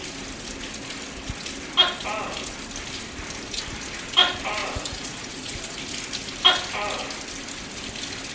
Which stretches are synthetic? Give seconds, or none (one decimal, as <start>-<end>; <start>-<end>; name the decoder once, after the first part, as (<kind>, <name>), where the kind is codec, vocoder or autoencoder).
4.6-5.6 (vocoder, Vocos)